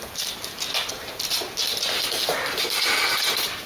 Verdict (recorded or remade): recorded